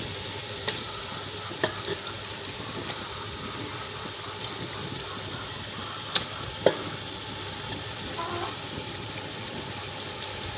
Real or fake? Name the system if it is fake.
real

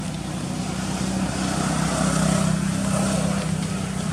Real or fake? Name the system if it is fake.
real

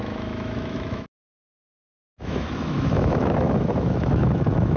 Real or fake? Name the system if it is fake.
fake, autoencoder, DAC-VAE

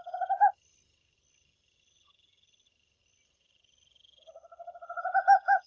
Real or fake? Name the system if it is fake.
real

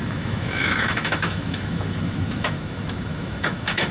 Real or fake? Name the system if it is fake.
fake, autoencoder, DAC-VAE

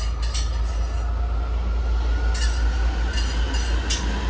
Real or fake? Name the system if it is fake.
real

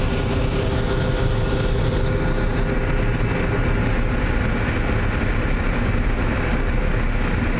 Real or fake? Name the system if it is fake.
real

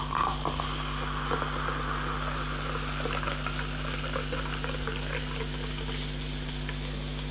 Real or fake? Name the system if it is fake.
real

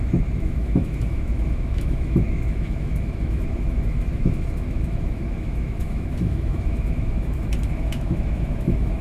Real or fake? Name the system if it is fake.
fake, autoencoder, DAC-VAE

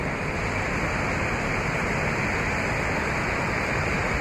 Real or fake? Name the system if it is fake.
real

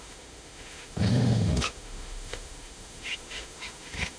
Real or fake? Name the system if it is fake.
fake, autoencoder, DAC-VAE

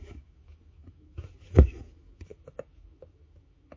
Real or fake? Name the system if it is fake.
fake, autoencoder, DAC-VAE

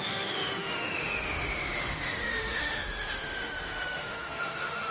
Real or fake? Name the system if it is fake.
fake, autoencoder, DAC-VAE